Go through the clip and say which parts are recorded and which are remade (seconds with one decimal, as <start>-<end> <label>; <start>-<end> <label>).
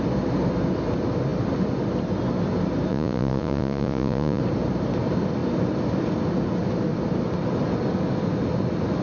0.0-2.9 recorded; 2.9-4.4 remade; 4.4-9.0 recorded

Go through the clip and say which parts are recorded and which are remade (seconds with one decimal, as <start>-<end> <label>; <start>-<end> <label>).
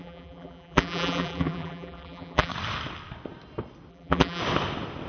0.0-2.5 remade; 2.5-3.9 recorded; 3.9-4.4 remade; 4.4-5.1 recorded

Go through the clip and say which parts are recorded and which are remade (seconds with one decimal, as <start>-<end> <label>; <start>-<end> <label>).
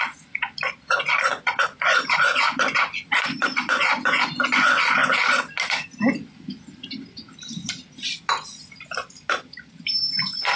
0.0-1.3 recorded; 1.3-4.4 remade; 4.4-10.6 recorded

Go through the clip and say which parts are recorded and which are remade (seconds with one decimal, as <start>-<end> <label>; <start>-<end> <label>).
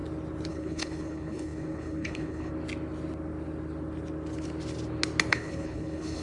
0.0-0.5 recorded; 0.5-2.5 remade; 2.5-5.3 recorded; 5.3-6.2 remade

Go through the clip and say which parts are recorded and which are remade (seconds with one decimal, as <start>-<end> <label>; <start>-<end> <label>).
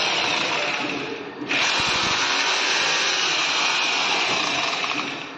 0.0-1.6 recorded; 1.6-4.8 remade; 4.8-5.4 recorded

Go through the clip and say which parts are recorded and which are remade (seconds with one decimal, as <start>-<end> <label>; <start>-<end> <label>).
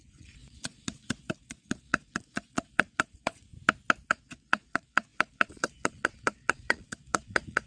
0.0-3.5 remade; 3.5-4.1 recorded; 4.1-7.7 remade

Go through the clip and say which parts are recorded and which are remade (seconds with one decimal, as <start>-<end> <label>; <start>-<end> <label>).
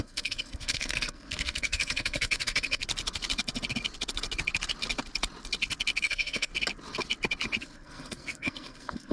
0.0-2.8 remade; 2.8-6.0 recorded; 6.0-6.5 remade; 6.5-7.6 recorded; 7.6-9.1 remade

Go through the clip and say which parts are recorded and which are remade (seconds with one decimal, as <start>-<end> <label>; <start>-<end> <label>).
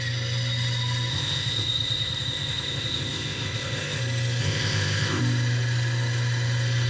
0.0-1.1 recorded; 1.1-4.0 remade; 4.0-4.4 recorded; 4.4-5.2 remade; 5.2-6.9 recorded